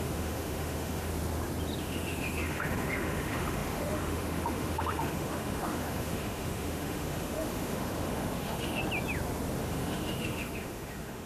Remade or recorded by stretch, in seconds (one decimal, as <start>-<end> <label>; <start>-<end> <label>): 0.0-1.1 remade; 1.1-1.8 recorded; 1.8-8.8 remade; 8.8-9.6 recorded; 9.6-11.3 remade